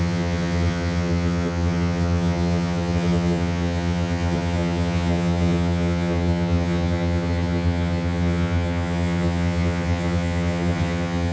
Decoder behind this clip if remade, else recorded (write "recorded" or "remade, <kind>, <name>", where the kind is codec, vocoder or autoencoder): remade, vocoder, HiFi-GAN